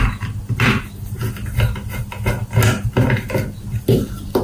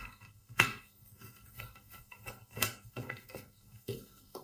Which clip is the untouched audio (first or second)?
first